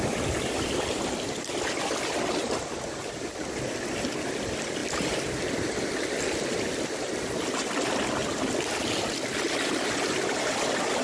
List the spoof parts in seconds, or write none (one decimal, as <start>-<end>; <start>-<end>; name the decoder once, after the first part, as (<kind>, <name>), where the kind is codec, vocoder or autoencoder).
none